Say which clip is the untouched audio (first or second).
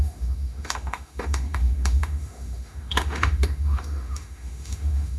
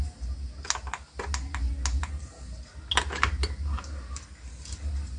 second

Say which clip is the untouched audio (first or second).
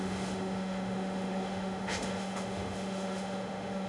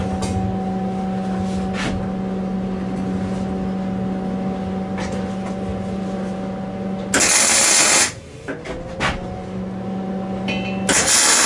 second